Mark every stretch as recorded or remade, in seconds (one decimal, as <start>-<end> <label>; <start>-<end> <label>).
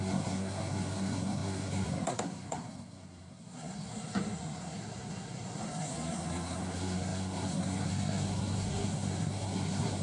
0.0-10.0 remade